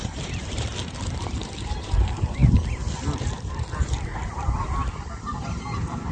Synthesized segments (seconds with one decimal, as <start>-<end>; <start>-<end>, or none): 0.0-2.4